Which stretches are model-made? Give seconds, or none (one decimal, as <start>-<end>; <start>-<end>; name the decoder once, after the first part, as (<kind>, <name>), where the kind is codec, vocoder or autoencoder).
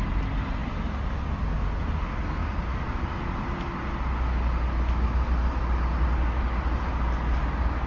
none